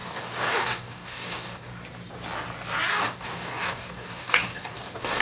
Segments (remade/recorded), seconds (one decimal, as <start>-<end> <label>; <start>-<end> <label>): 0.0-1.7 remade; 1.7-2.9 recorded; 2.9-5.2 remade